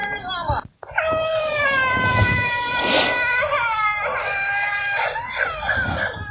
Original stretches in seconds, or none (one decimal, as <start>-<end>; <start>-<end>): 0.0-4.2; 5.0-6.3

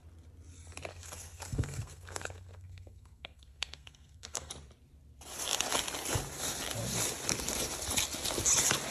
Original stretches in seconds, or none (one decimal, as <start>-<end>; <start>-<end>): 0.0-0.9; 4.5-8.9

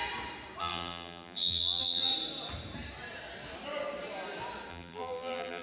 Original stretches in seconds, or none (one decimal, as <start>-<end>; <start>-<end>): 0.0-0.6; 2.1-4.7